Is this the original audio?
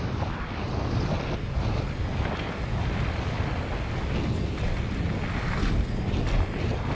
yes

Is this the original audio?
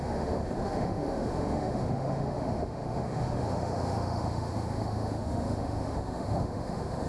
no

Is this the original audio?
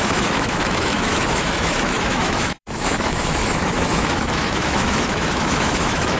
no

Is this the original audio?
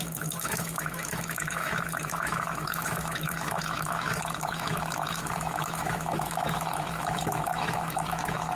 no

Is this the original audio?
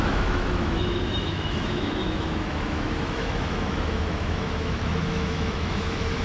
no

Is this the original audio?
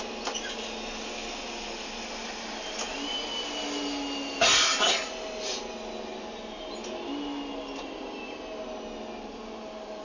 yes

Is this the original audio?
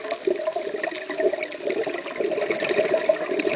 yes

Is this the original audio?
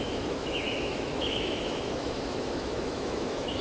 no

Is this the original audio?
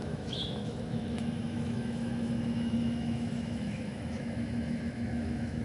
no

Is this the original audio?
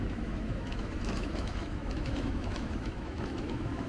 no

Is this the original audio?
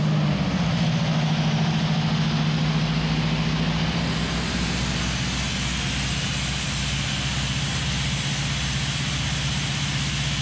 yes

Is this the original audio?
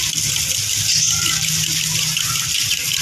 yes